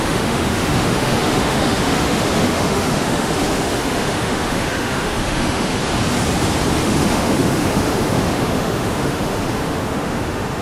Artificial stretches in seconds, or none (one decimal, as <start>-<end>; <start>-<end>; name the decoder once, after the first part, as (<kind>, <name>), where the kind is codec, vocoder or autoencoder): 0.0-5.8 (autoencoder, DAC-VAE); 6.8-10.6